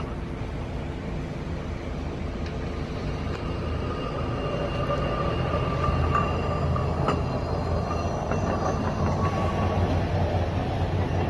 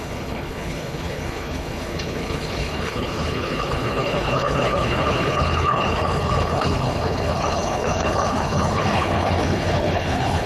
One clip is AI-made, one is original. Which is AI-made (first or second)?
second